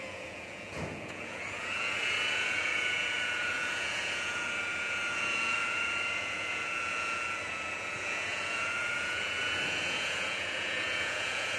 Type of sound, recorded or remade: remade